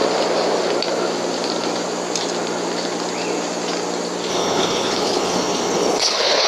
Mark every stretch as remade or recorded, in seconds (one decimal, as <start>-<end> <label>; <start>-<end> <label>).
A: 0.0-4.3 recorded; 4.3-6.5 remade